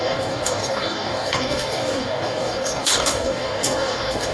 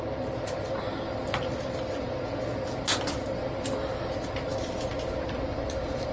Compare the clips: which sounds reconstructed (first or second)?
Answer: first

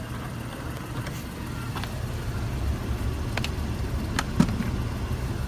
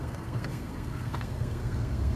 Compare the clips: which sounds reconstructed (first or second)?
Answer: second